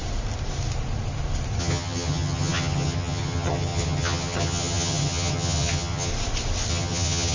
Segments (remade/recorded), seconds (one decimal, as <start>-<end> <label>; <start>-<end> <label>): 0.0-1.6 recorded; 1.6-6.1 remade; 6.1-6.7 recorded; 6.7-7.3 remade